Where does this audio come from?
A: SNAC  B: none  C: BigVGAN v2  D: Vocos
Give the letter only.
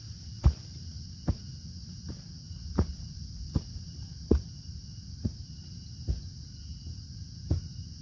B